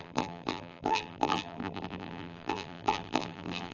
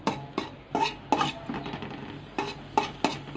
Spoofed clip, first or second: first